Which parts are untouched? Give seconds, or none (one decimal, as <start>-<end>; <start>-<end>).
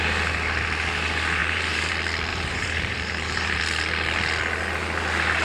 0.0-1.4; 1.9-2.3; 3.6-5.4